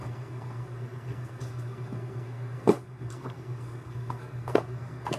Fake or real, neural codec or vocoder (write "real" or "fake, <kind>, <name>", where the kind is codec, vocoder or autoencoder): fake, codec, SNAC